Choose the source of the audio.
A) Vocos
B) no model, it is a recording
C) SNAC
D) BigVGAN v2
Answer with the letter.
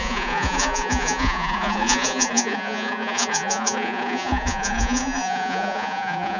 A